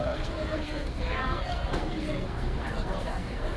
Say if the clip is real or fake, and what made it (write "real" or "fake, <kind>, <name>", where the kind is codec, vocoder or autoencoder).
fake, codec, SNAC